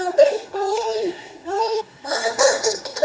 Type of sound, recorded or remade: remade